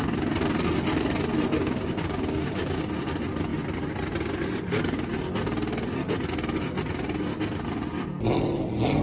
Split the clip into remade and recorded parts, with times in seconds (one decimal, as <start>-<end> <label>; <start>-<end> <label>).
0.0-1.6 recorded; 1.6-2.8 remade; 2.8-9.0 recorded